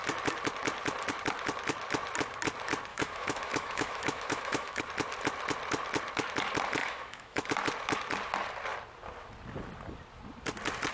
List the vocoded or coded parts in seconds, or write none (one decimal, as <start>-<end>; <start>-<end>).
2.9-4.8; 6.8-7.5